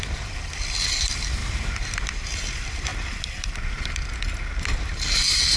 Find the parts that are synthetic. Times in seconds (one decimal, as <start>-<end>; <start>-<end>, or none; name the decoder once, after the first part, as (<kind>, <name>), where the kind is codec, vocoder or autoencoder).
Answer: 0.0-2.9 (vocoder, BigVGAN v2); 4.9-5.6